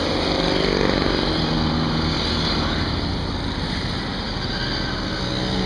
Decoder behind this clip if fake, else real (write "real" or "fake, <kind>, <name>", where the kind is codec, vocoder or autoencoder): real